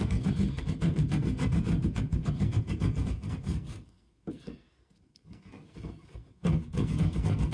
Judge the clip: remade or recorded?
remade